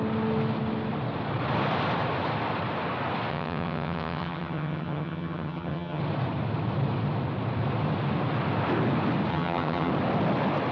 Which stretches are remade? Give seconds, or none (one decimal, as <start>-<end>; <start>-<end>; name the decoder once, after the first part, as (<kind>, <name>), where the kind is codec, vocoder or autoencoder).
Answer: 3.3-6.0 (vocoder, HiFi-GAN); 9.3-9.9